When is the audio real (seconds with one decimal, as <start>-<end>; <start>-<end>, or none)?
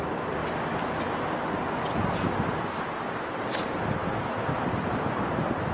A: 0.0-4.0; 5.0-5.7